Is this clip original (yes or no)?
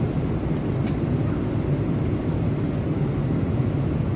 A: yes